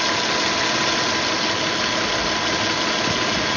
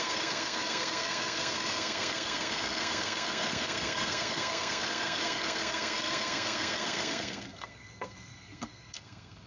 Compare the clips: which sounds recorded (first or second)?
first